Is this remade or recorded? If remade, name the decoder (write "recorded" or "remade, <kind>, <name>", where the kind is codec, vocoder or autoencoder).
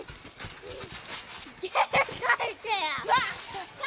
recorded